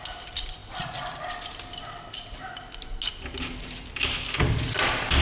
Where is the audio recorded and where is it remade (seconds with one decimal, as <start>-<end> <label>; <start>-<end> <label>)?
0.0-5.2 recorded